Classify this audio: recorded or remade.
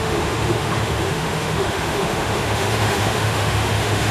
remade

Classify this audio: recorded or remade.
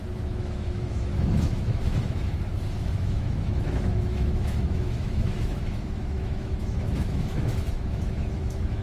remade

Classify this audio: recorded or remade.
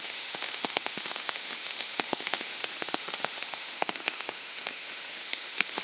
remade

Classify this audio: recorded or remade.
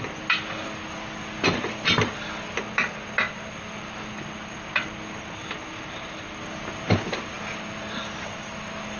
recorded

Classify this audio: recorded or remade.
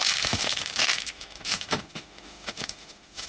remade